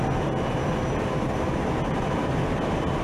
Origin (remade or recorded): recorded